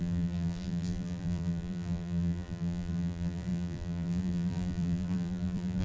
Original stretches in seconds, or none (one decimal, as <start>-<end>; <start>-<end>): none